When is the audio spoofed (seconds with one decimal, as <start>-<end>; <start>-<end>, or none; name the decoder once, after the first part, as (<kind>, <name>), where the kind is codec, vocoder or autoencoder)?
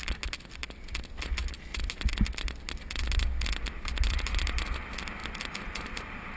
none